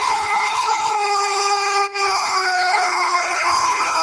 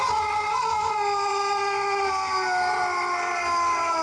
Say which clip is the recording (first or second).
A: second